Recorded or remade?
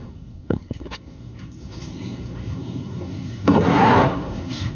remade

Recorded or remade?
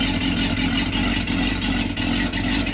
recorded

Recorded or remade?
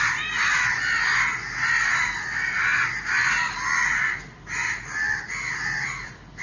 recorded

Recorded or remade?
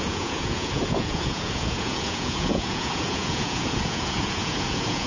remade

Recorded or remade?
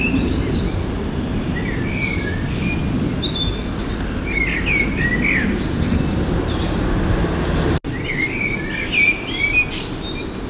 recorded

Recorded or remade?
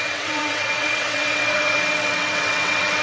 remade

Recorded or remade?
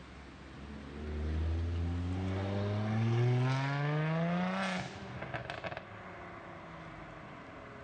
recorded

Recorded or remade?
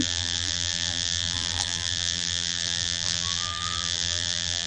remade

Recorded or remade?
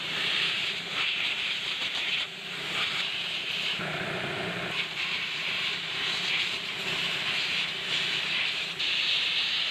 remade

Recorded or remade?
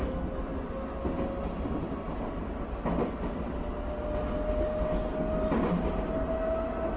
recorded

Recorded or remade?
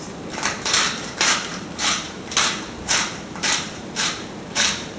remade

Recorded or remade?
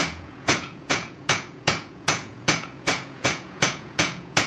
remade